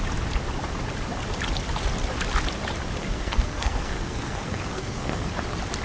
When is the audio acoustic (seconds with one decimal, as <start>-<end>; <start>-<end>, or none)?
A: 0.0-3.0; 5.3-5.8